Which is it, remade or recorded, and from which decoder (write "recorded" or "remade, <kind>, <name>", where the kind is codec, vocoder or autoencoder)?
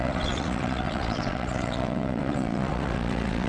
remade, vocoder, WaveNeXt